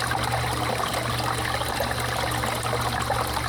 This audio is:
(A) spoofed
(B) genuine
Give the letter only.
B